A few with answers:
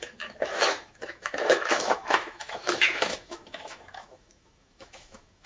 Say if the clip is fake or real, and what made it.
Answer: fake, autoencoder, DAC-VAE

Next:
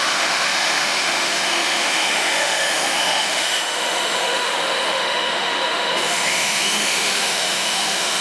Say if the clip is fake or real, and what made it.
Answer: fake, autoencoder, DAC-VAE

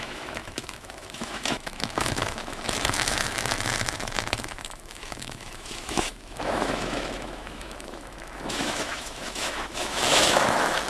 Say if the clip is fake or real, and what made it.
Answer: fake, autoencoder, DAC-VAE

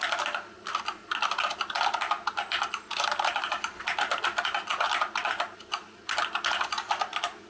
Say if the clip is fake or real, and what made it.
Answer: real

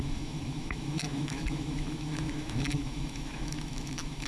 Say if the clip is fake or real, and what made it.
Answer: fake, autoencoder, DAC-VAE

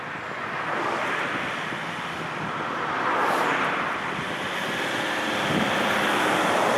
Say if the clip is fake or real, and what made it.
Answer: real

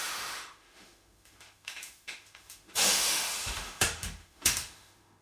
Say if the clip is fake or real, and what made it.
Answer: fake, autoencoder, DAC-VAE